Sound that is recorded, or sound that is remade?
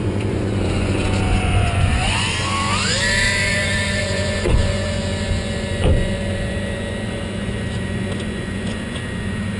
remade